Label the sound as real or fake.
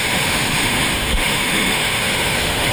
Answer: fake